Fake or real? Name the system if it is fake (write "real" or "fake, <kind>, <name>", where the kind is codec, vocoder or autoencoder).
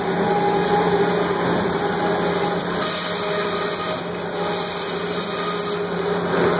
real